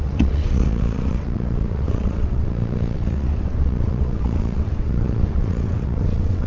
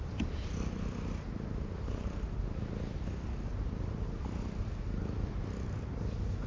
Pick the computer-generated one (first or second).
first